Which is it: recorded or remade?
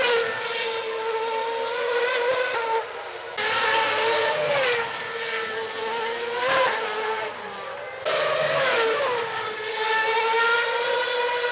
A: recorded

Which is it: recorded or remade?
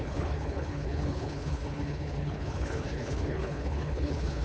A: remade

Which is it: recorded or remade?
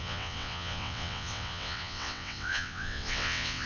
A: remade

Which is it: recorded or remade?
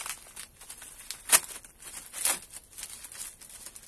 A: recorded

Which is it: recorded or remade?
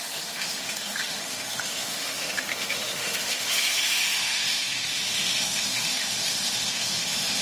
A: remade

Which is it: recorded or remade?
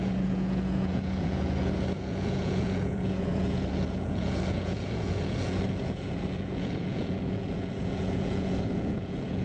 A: remade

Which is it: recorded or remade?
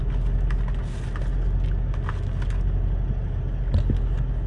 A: recorded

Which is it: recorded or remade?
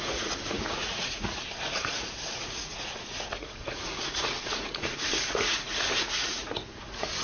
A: remade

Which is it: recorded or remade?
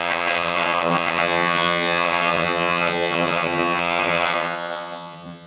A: remade